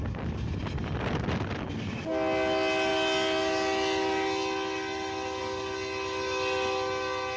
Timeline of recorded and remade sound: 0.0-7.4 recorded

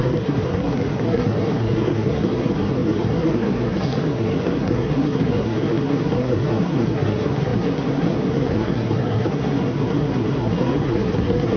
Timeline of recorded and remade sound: 0.0-11.6 remade

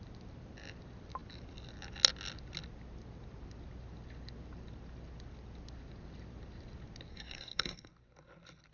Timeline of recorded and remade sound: 0.0-7.1 recorded; 7.1-7.9 remade; 7.9-8.7 recorded

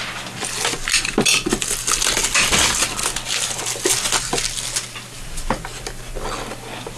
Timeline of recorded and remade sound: 0.0-7.0 recorded

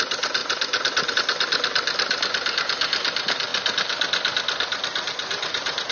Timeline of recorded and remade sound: 0.0-5.9 recorded